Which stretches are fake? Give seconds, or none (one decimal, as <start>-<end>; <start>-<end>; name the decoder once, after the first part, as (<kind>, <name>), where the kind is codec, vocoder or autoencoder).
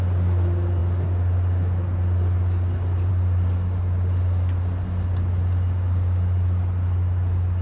none